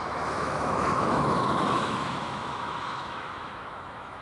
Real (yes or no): no